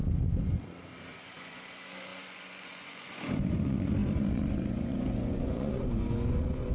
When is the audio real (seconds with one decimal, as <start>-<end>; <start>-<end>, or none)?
0.0-1.2